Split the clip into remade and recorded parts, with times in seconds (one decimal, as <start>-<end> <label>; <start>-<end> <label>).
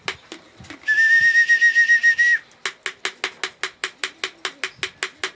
0.0-5.3 recorded